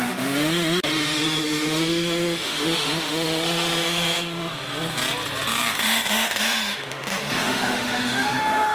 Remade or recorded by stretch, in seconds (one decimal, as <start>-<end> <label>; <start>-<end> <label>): 0.0-4.5 remade; 4.5-5.7 recorded; 5.7-8.7 remade